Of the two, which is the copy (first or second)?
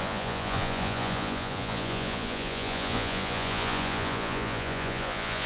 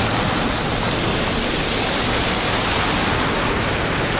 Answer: first